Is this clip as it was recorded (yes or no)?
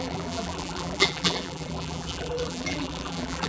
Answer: no